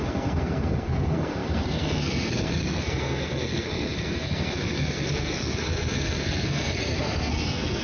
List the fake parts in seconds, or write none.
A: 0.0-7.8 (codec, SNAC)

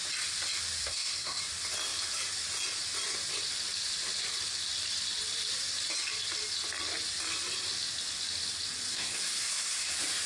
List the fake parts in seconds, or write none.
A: 0.8-1.4 (codec, SNAC); 8.9-9.9

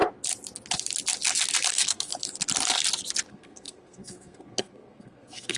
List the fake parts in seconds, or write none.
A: 1.7-2.1 (codec, SNAC); 3.3-5.6

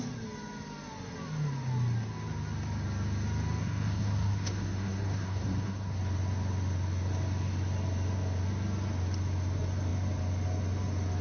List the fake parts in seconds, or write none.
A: 3.6-6.0 (codec, SNAC)

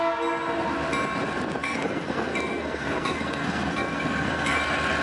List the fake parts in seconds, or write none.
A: 1.6-4.6 (codec, SNAC)

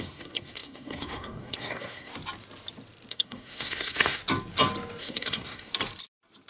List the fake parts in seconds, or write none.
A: 0.0-2.1 (codec, SNAC); 3.1-4.2; 5.0-5.7